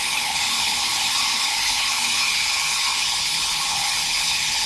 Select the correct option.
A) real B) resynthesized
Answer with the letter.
B